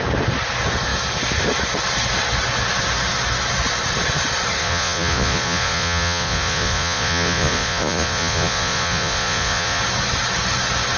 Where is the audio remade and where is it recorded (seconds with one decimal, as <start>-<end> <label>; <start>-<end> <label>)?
0.0-4.6 recorded; 4.6-9.8 remade; 9.8-11.0 recorded